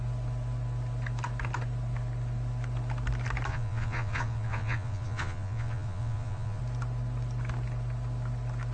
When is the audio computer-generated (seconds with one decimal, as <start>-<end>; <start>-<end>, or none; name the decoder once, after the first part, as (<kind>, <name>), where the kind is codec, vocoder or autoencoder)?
3.5-6.6 (vocoder, Vocos)